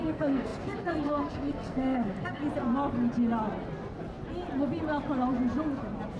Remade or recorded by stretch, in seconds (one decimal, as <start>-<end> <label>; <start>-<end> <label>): 0.0-2.4 remade; 2.4-6.2 recorded